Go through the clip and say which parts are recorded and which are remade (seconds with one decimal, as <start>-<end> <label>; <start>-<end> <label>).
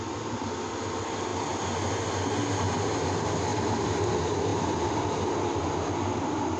0.0-4.5 recorded; 4.5-6.1 remade; 6.1-6.6 recorded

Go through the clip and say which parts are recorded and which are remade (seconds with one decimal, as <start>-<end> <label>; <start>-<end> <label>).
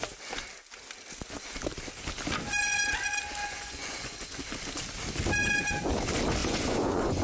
0.0-3.4 recorded; 3.4-4.4 remade; 4.4-6.4 recorded; 6.4-7.2 remade